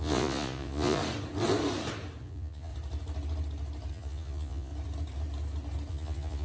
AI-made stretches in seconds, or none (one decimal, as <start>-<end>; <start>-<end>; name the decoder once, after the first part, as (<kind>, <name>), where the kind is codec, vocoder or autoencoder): 0.0-1.0 (vocoder, Vocos); 2.2-2.7; 3.9-4.7; 5.9-6.4

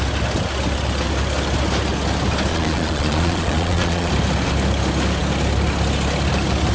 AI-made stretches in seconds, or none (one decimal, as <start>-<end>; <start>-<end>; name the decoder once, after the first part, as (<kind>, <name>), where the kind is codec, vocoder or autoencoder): 2.5-4.1 (vocoder, Vocos)

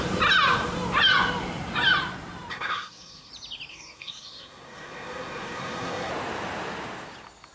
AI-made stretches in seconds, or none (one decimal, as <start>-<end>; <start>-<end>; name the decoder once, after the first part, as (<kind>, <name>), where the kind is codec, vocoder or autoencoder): 2.5-3.3 (codec, SNAC); 3.7-6.1

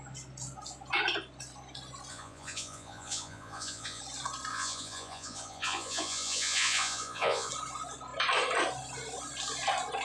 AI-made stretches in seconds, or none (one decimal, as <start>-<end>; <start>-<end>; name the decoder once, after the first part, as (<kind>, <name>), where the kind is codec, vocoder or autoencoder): 2.1-4.0 (vocoder, Vocos); 4.5-7.5

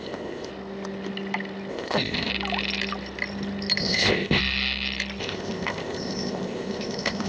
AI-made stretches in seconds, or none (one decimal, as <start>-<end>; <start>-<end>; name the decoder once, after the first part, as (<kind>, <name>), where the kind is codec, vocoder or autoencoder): 0.0-0.5 (codec, ZipCodec); 1.7-2.3; 3.8-4.4; 5.2-7.3

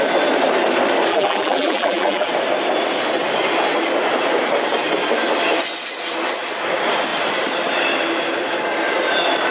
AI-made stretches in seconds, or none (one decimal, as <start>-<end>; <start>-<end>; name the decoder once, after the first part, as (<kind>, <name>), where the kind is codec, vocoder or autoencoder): 1.1-2.3 (vocoder, BigVGAN v2)